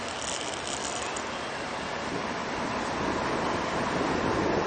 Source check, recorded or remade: recorded